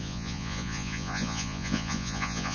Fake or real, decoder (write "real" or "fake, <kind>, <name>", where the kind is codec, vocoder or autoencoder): fake, vocoder, Vocos